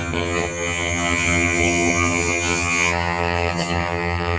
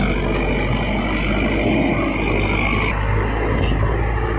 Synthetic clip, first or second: first